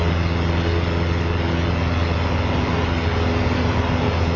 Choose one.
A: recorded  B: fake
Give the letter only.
A